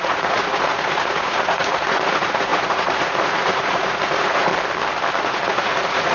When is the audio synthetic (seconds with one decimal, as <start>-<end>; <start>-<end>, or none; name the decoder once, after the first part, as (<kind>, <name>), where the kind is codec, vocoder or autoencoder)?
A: 0.0-4.5 (vocoder, Vocos); 5.2-6.1